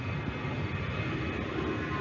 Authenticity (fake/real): real